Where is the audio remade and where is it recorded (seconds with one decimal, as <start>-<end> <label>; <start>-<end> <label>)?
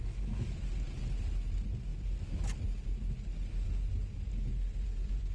0.0-0.7 remade; 0.7-5.3 recorded